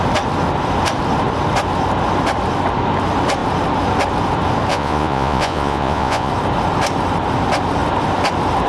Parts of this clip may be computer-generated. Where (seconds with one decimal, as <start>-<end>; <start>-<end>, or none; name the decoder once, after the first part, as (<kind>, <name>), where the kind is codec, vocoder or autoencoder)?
4.7-6.3 (vocoder, Vocos)